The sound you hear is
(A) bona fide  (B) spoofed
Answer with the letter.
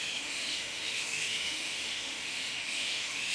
B